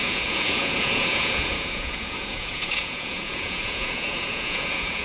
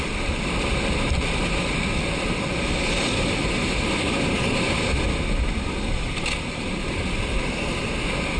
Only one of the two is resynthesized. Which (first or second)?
first